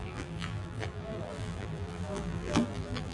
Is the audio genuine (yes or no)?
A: no